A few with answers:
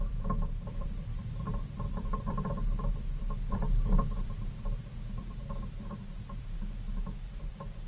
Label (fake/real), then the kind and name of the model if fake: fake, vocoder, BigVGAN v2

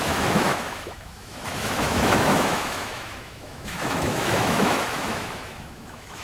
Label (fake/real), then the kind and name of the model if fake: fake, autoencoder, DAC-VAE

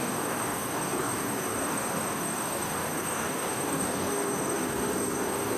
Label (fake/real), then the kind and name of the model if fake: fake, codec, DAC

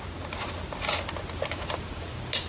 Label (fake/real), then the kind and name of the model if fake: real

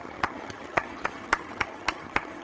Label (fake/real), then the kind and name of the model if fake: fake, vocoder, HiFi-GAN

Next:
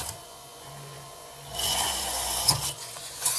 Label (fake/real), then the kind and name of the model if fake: fake, vocoder, Vocos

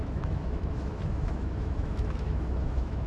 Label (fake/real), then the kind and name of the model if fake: fake, autoencoder, DAC-VAE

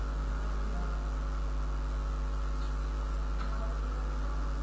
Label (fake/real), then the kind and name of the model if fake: real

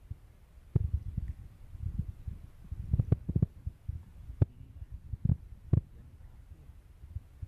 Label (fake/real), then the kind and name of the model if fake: real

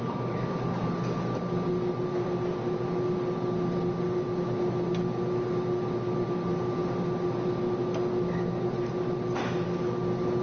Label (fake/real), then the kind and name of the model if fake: real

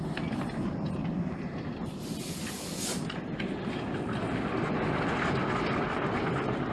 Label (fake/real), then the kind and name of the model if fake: real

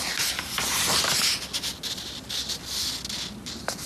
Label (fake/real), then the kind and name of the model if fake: real